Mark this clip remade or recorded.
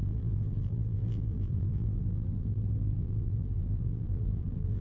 remade